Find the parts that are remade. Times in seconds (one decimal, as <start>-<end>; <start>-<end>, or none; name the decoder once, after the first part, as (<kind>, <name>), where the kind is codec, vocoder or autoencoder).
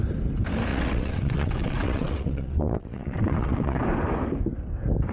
0.7-3.8 (vocoder, WaveNeXt)